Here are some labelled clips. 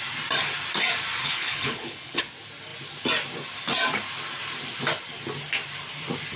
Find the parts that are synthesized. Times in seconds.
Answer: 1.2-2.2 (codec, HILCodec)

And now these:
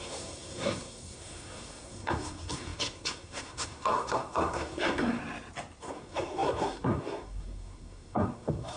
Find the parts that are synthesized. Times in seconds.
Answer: 0.0-5.2 (codec, SNAC); 5.8-8.8